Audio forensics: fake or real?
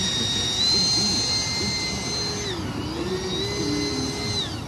real